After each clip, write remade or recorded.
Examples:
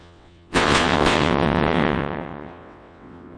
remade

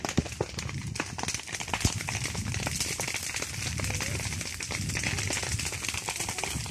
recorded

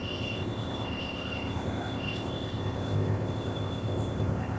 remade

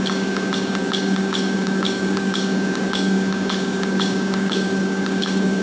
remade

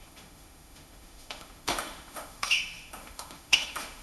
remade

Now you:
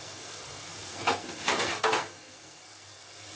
remade